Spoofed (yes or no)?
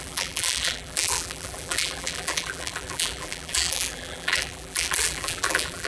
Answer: yes